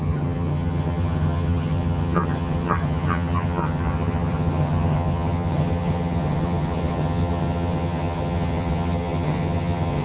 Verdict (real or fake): fake